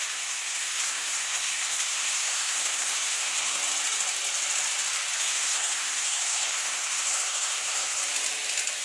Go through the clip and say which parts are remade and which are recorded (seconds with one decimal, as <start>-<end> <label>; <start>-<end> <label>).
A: 0.0-3.6 remade; 3.6-5.2 recorded; 5.2-8.0 remade; 8.0-8.8 recorded